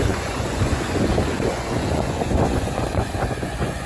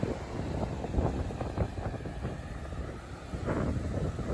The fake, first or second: first